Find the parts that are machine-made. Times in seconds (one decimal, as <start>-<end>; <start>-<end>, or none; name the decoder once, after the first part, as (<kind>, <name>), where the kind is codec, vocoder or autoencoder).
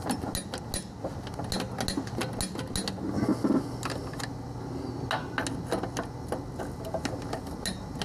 none